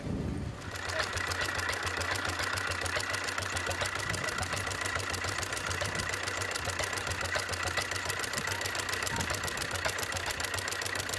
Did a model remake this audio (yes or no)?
no